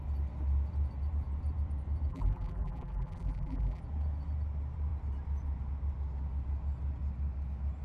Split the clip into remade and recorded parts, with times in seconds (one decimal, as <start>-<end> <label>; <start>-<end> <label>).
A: 0.0-2.1 recorded; 2.1-3.8 remade; 3.8-7.8 recorded